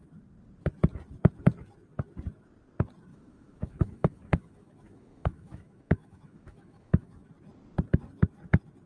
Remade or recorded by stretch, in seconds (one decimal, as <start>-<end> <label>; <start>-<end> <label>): 0.0-3.1 recorded; 3.1-7.3 remade; 7.3-8.9 recorded